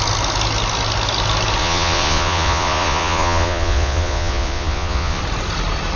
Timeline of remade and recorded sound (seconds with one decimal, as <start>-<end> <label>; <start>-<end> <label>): 0.0-1.6 recorded; 1.6-5.2 remade; 5.2-6.0 recorded